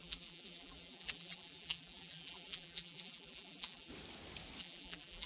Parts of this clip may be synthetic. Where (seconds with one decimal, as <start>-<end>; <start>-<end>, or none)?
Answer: 0.0-3.9; 4.6-5.3